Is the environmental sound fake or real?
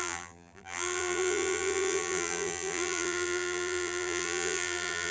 fake